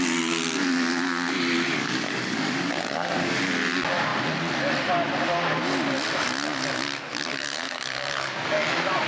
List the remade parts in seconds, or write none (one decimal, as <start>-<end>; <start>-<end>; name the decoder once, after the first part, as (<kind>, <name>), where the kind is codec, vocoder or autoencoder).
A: 1.8-3.4 (codec, DAC); 7.3-9.1